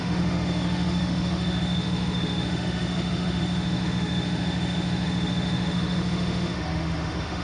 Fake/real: fake